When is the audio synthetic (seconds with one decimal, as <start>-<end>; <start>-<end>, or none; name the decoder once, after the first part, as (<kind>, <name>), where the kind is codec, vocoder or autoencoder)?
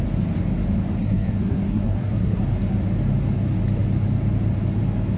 1.0-2.4 (codec, SNAC)